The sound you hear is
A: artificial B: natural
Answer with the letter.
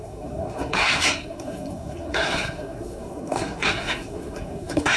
A